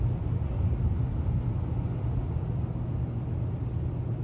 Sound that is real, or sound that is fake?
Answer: real